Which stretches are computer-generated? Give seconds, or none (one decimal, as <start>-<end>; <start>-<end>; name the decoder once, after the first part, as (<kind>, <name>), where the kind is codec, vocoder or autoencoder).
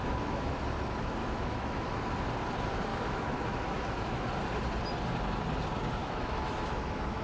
0.0-0.5 (autoencoder, DAC-VAE); 1.2-2.1; 2.9-4.3; 6.0-7.2